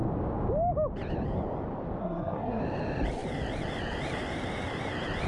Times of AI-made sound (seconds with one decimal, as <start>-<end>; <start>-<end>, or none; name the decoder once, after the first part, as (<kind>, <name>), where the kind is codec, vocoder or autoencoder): 2.0-2.6 (codec, SNAC)